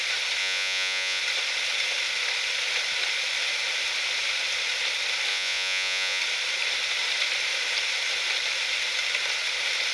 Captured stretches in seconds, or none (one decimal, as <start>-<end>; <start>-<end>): 0.0-0.4; 1.2-5.3; 6.2-9.9